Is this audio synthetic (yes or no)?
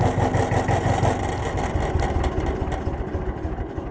no